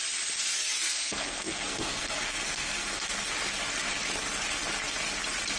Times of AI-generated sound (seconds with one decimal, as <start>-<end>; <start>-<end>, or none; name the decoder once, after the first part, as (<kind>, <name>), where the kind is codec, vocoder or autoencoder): 0.4-3.3 (codec, SNAC)